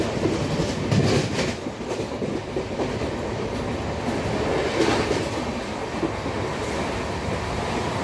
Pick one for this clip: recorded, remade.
recorded